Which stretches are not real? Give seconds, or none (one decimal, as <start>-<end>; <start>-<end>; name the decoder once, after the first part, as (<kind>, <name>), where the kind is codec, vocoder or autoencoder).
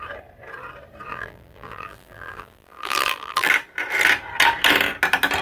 1.1-3.5 (vocoder, BigVGAN v2)